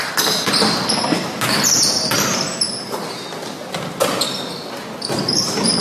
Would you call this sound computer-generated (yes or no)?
no